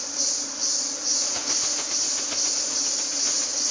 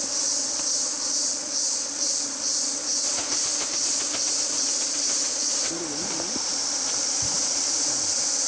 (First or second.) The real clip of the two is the first